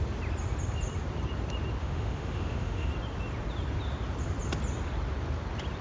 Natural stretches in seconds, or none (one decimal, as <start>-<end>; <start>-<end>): 0.0-1.8; 2.9-5.8